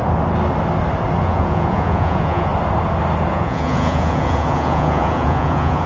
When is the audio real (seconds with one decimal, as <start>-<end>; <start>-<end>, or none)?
0.0-1.2; 2.5-3.3